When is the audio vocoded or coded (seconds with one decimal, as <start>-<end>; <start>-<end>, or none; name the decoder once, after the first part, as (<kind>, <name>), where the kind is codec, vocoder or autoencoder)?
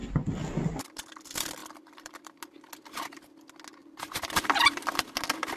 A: 0.0-0.8 (vocoder, BigVGAN v2); 1.6-2.3; 3.8-5.0